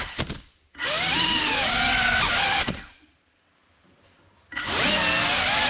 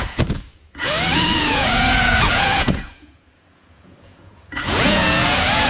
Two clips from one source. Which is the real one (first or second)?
first